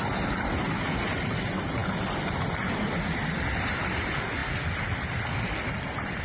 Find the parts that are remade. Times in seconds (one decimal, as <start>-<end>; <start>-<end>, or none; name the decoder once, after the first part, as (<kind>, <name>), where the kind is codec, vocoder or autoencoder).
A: none